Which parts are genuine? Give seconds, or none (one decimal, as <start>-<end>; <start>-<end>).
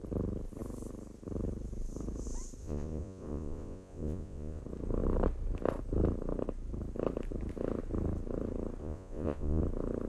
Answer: 0.0-2.6; 4.6-8.8; 9.6-10.1